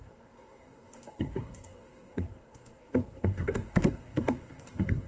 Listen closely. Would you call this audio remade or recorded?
remade